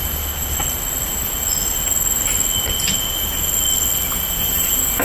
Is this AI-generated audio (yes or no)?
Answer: no